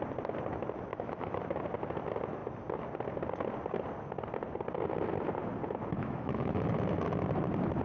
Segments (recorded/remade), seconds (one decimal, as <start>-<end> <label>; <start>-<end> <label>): 0.0-0.9 recorded; 0.9-1.4 remade; 1.4-6.0 recorded; 6.0-6.7 remade; 6.7-7.8 recorded